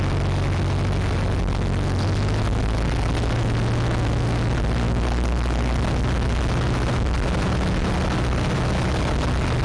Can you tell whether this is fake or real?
real